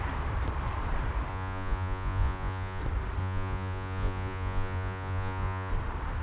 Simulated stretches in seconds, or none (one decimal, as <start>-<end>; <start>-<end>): 1.3-2.8; 3.2-5.7